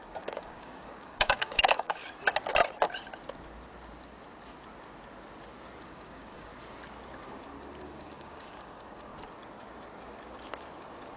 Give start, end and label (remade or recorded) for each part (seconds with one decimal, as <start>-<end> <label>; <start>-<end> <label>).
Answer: 0.0-2.0 remade; 2.0-5.8 recorded; 5.8-6.5 remade; 6.5-7.8 recorded; 7.8-9.1 remade; 9.1-11.2 recorded